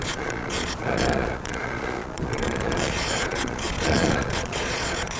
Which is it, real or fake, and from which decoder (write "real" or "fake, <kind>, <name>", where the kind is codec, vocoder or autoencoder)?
fake, vocoder, Vocos